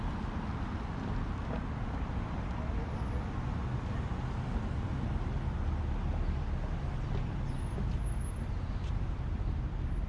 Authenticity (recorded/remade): recorded